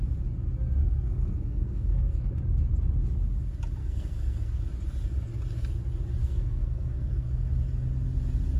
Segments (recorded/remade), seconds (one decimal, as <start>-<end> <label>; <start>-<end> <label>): 0.0-0.8 recorded; 0.8-2.3 remade; 2.3-3.8 recorded; 3.8-4.6 remade; 4.6-6.2 recorded; 6.2-7.5 remade; 7.5-8.6 recorded